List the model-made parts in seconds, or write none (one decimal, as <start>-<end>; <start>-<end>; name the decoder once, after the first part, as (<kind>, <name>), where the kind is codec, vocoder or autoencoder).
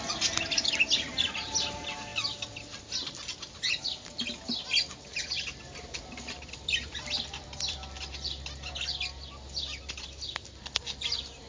5.1-8.7 (vocoder, BigVGAN v2)